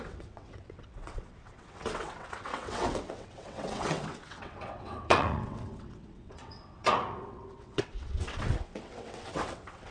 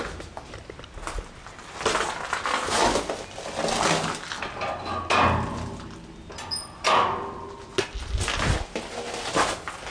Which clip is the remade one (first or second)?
first